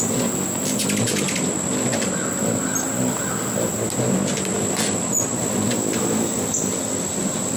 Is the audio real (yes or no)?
yes